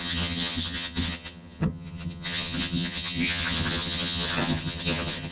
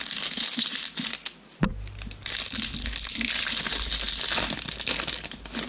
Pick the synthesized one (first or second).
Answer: first